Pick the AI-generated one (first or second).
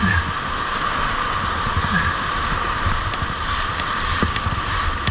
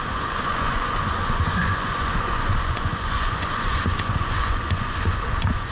second